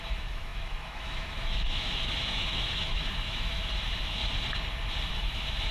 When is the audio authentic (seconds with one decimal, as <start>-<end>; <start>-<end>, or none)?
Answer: 4.2-5.1